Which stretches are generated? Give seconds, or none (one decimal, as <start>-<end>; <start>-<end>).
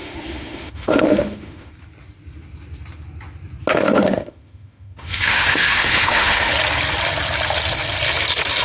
0.0-1.7; 3.7-6.5